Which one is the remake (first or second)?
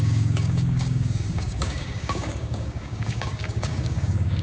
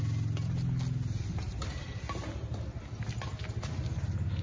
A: first